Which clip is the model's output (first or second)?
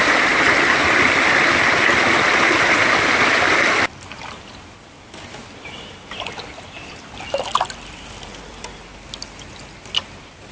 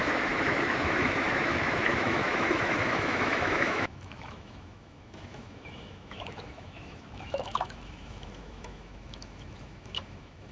second